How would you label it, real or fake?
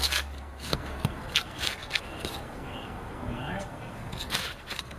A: fake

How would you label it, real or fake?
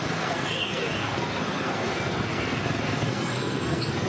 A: fake